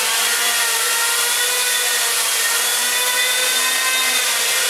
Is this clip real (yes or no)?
yes